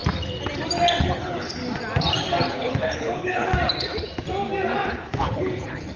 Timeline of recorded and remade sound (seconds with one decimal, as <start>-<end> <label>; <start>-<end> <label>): 0.0-1.0 recorded; 1.0-1.6 remade; 1.6-2.5 recorded; 2.5-3.5 remade; 3.5-4.9 recorded; 4.9-6.0 remade